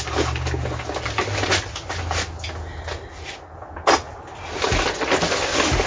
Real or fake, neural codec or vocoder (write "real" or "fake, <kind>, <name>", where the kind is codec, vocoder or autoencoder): real